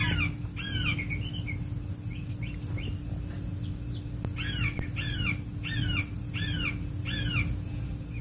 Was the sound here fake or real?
real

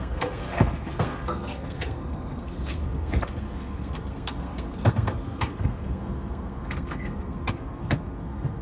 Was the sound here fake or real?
fake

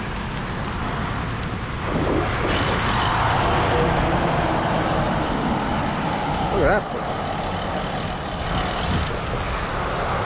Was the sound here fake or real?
real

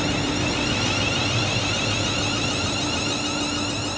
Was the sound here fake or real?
real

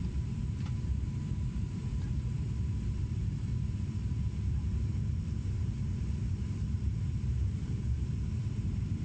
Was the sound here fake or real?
fake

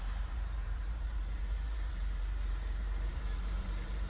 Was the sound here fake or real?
fake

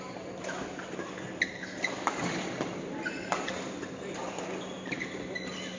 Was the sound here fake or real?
real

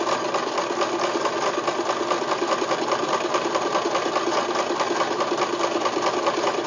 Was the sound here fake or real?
real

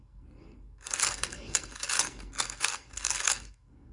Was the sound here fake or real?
fake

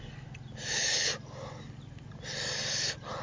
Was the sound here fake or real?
real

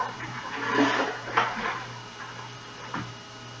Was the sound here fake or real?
fake